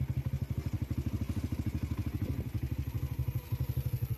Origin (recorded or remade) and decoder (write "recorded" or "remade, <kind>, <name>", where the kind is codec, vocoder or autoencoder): recorded